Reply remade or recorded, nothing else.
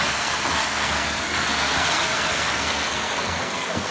remade